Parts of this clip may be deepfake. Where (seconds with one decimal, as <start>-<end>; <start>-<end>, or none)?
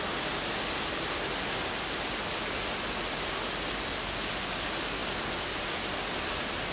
none